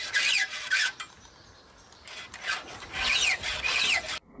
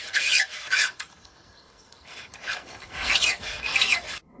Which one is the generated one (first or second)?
second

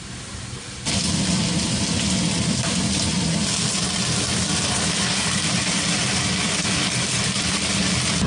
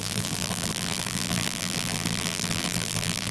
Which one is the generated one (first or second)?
second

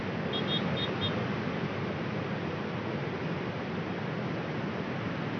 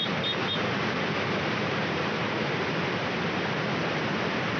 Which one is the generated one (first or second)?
second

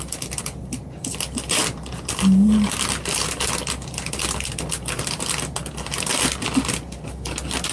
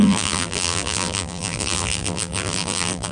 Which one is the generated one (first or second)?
second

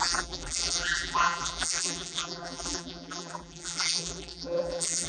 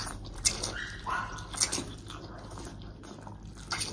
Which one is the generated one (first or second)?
first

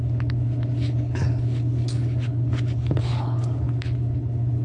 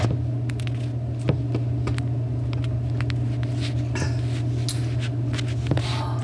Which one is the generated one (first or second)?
first